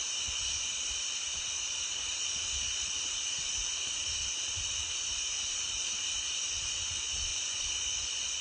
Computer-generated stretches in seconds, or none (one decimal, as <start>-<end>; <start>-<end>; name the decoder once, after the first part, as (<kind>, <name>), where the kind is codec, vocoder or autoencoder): 7.3-8.4 (vocoder, Vocos)